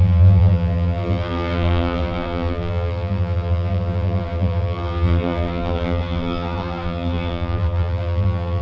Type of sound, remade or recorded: remade